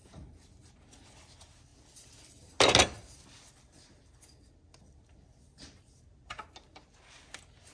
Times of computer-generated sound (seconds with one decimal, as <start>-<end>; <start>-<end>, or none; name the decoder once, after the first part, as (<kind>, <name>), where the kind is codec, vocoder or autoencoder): none